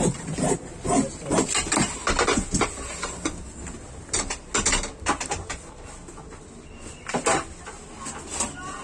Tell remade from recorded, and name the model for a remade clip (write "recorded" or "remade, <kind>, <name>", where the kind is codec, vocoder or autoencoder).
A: recorded